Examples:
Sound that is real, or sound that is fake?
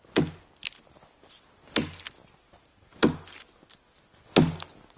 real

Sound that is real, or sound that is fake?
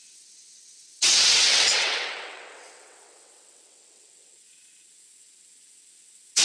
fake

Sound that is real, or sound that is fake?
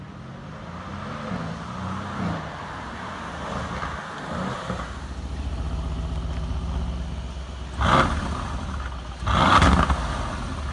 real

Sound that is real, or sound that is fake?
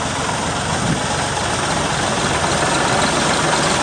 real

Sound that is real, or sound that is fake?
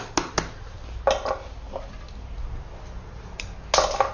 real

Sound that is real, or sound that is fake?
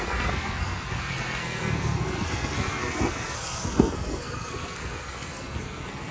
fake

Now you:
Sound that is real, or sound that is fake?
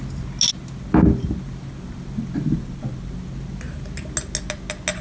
real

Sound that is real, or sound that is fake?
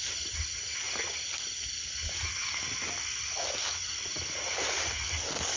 real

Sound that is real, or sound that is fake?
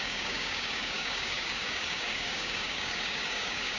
fake